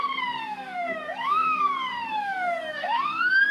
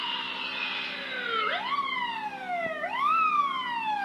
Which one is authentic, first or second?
second